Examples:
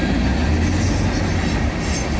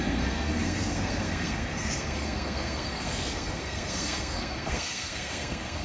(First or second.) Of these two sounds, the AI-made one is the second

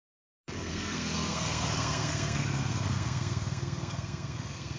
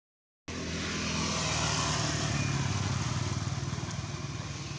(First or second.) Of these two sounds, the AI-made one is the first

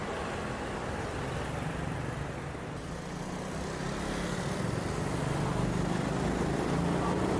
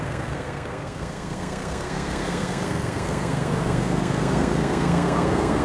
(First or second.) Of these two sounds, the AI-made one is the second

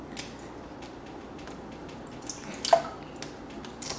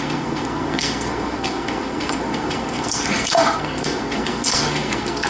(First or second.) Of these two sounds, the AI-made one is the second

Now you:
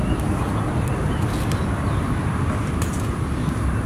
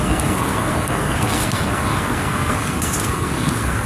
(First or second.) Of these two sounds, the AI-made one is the second